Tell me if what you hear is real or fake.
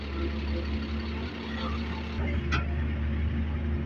real